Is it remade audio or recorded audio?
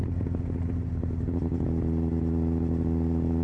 recorded